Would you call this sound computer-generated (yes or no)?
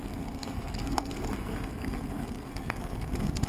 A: yes